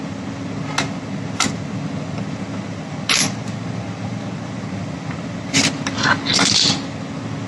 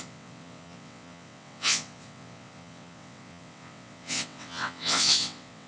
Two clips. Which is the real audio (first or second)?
first